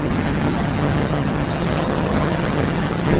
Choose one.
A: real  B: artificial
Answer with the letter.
B